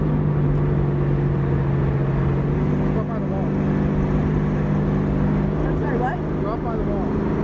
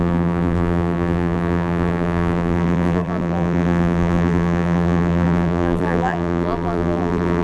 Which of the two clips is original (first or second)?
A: first